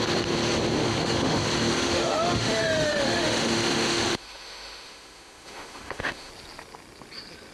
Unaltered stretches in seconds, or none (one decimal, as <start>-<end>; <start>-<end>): 0.0-0.8; 1.4-1.8; 6.3-7.5